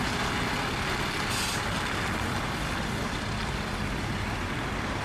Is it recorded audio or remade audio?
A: recorded